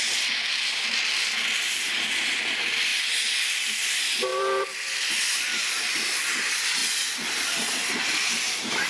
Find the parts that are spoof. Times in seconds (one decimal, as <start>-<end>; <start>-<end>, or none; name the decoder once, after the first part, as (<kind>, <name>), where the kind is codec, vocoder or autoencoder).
0.0-2.9 (vocoder, BigVGAN v2); 3.4-6.8; 8.4-8.9